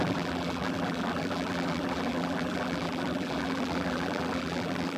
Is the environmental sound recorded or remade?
remade